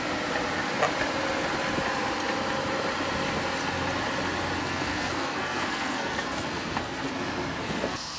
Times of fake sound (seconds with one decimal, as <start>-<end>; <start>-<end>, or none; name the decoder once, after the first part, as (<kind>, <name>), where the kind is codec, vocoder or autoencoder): 4.6-7.1 (codec, SNAC); 7.6-8.2